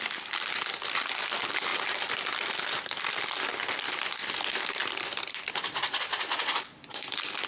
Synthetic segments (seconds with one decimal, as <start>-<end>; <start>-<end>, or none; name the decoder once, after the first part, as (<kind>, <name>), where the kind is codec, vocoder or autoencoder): 0.0-7.5 (vocoder, BigVGAN v2)